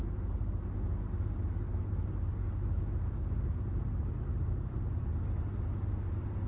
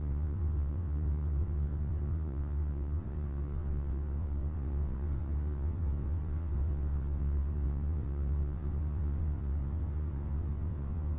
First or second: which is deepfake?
second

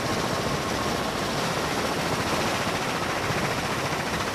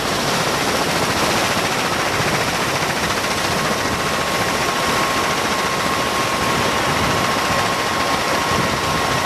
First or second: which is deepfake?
second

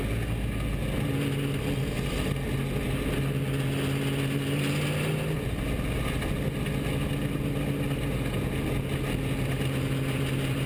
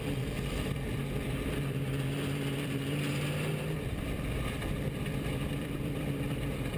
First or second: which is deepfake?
second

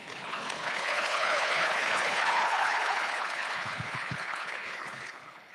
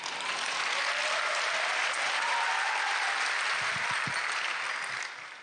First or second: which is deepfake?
first